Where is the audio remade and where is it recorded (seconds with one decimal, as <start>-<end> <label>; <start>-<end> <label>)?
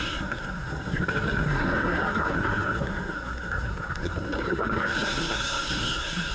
0.0-6.3 remade